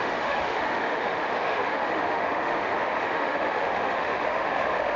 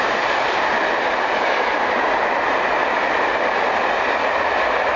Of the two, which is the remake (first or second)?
first